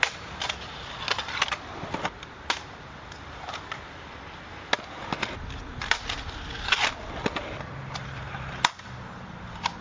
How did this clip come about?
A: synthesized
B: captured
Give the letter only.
B